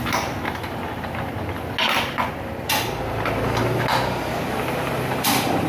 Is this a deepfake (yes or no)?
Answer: no